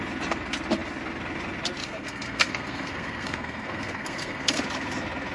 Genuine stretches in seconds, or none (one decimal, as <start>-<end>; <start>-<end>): 0.0-1.8; 4.6-5.3